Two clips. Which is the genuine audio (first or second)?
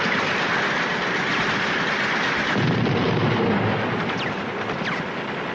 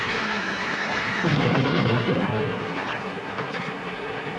first